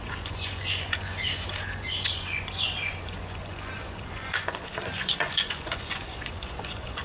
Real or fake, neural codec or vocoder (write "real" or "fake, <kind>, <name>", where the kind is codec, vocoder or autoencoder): fake, vocoder, Vocos